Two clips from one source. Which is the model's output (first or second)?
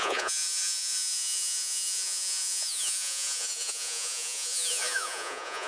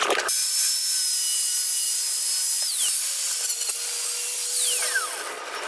first